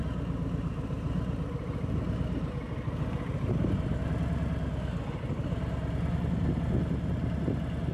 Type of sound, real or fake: real